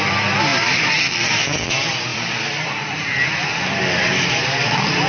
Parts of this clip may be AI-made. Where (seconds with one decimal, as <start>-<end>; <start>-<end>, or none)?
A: 0.0-5.1